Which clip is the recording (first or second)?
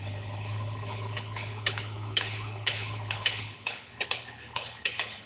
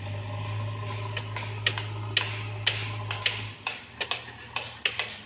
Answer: second